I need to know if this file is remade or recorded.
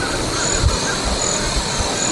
recorded